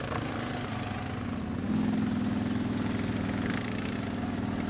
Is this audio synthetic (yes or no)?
no